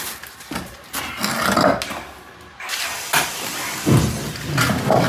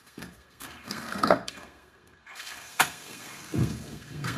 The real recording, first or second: first